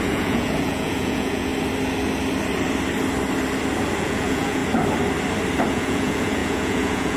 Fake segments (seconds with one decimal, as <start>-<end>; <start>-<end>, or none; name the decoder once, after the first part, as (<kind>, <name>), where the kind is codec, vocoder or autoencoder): 0.0-1.5 (vocoder, Vocos); 4.0-4.6; 5.7-7.2